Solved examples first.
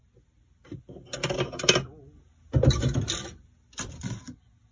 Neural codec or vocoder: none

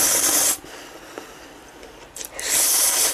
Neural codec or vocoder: none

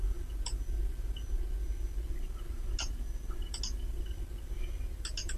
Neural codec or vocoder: none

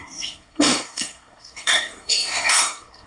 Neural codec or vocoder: codec, SNAC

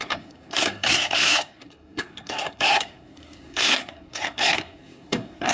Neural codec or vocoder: codec, SNAC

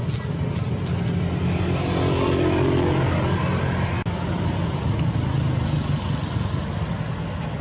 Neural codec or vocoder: none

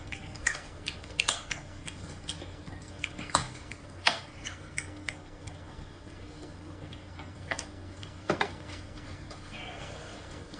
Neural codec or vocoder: codec, SNAC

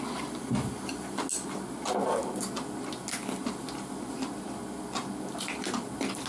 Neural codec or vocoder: none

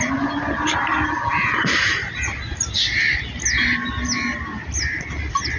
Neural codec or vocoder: none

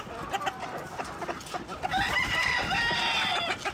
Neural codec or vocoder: none